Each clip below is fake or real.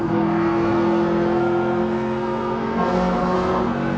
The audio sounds fake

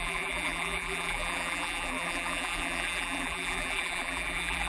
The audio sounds fake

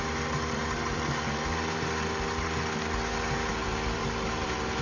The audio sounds fake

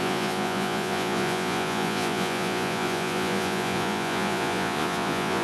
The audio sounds fake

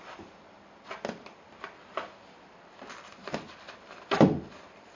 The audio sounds real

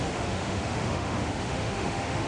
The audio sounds fake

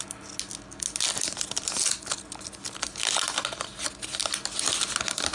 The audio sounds real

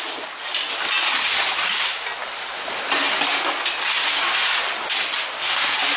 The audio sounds real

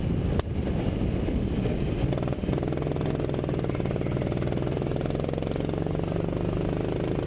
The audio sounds real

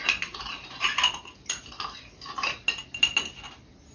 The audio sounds real